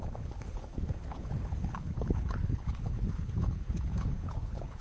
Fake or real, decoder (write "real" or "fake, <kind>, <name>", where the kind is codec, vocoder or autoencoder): fake, codec, HILCodec